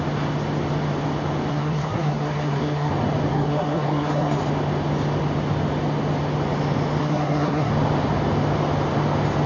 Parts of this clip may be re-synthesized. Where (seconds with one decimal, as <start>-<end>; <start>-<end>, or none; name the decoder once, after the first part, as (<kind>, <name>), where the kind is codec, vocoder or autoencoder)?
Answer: 1.5-2.9 (codec, SNAC); 3.3-4.4; 7.0-7.7